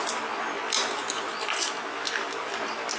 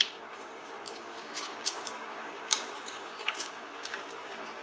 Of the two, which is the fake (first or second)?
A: second